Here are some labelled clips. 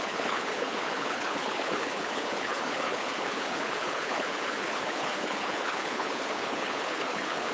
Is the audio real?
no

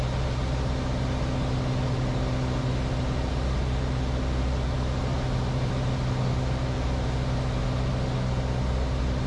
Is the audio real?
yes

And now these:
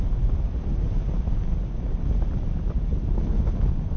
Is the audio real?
yes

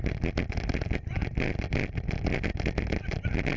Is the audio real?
yes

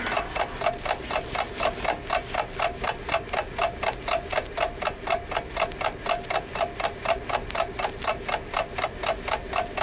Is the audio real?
yes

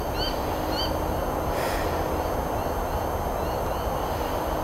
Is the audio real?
yes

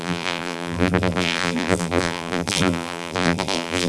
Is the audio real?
no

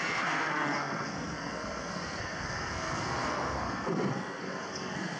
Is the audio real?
no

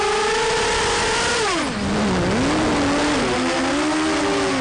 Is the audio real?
yes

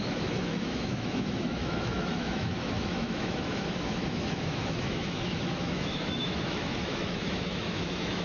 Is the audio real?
no